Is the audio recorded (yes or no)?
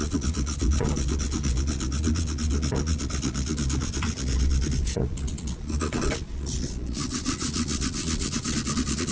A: no